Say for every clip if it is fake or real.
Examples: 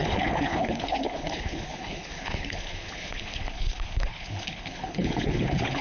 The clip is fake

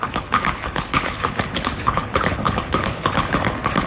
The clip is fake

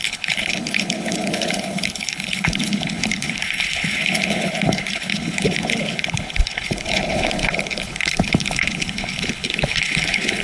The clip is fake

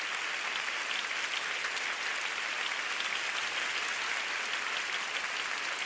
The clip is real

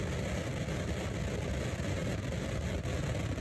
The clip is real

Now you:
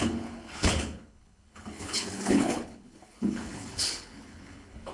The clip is fake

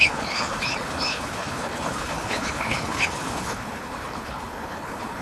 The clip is fake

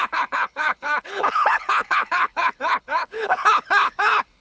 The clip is fake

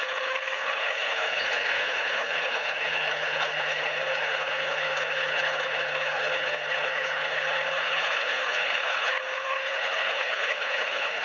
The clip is fake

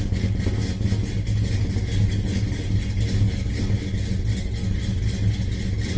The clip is real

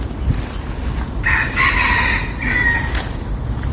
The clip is real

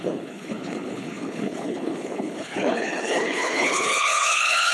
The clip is fake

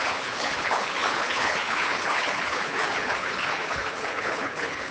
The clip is fake